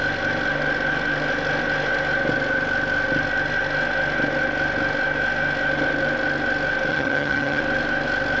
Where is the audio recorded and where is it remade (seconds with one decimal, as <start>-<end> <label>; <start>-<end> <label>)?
0.0-6.9 recorded; 6.9-7.6 remade; 7.6-8.4 recorded